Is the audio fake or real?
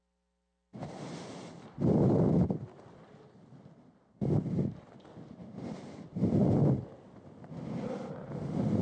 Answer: real